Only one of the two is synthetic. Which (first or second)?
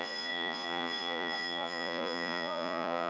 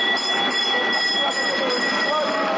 first